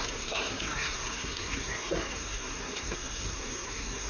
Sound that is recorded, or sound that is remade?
remade